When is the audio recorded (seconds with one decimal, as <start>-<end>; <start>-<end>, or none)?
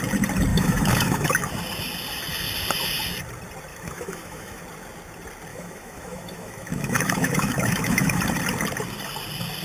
0.0-0.5; 1.5-3.7; 4.6-5.5; 8.2-9.6